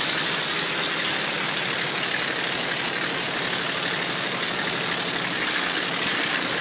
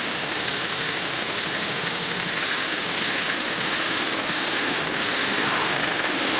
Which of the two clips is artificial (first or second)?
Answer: second